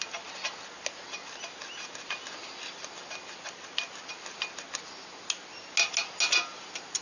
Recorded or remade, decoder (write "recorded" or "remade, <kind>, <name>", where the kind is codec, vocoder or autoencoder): recorded